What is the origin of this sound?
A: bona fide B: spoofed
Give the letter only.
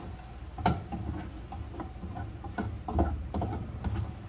A